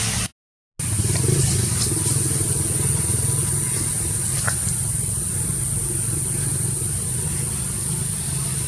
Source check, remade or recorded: recorded